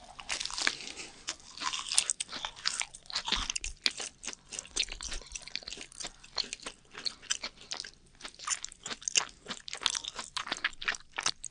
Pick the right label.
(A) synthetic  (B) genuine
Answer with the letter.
B